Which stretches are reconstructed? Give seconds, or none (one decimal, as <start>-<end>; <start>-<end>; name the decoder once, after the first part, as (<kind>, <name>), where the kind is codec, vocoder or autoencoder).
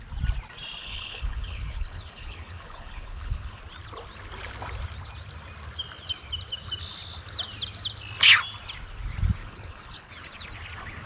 0.8-3.6 (codec, HILCodec); 9.4-10.1